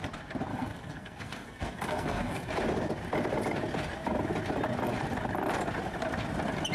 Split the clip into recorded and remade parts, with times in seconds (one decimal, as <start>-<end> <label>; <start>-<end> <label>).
0.0-0.5 recorded; 0.5-2.5 remade; 2.5-6.7 recorded